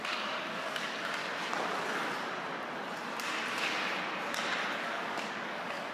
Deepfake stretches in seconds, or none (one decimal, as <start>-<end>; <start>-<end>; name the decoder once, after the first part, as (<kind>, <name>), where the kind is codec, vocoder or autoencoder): 0.0-1.2 (codec, DAC); 4.7-5.9